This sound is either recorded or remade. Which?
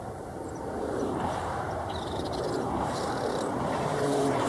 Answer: remade